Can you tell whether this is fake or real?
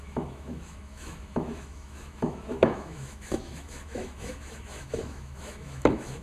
fake